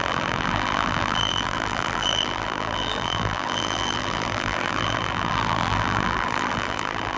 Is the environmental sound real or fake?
fake